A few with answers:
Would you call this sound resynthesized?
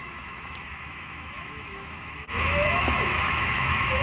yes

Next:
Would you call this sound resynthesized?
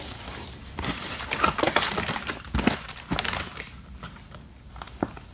no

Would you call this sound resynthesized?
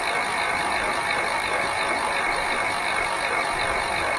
no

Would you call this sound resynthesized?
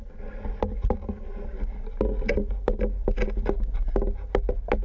no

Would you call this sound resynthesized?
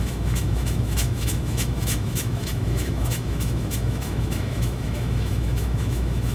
yes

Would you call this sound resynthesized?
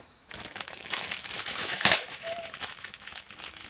yes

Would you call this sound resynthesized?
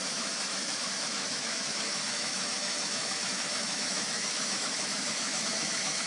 yes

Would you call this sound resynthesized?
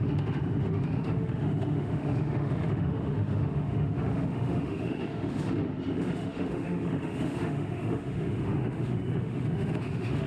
yes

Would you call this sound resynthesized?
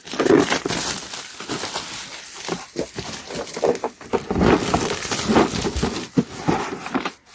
no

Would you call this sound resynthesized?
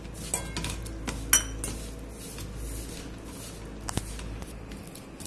no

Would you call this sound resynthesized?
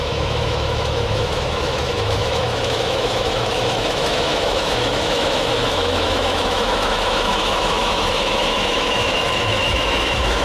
yes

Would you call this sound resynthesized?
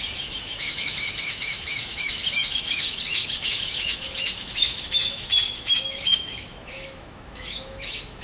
yes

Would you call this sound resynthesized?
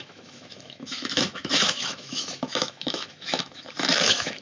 yes